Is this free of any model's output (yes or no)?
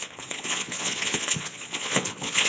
no